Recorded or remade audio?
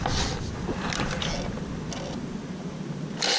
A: recorded